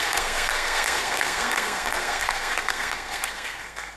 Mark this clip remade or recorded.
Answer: remade